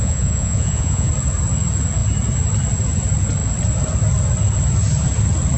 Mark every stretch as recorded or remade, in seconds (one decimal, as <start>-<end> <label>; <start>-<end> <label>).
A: 0.0-1.1 remade; 1.1-5.6 recorded